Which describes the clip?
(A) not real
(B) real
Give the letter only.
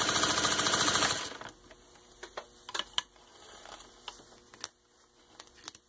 B